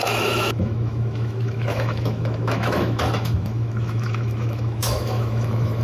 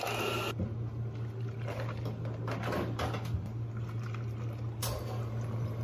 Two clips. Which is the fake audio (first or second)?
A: first